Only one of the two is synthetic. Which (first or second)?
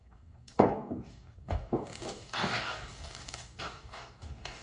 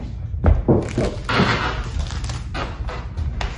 first